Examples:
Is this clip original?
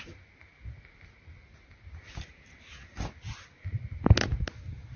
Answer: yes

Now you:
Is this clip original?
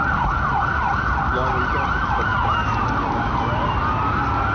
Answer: yes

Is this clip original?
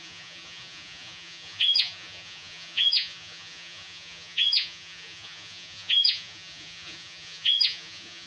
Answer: no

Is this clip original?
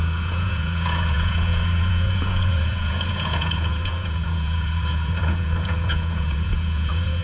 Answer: no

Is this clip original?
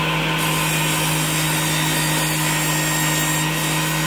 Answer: yes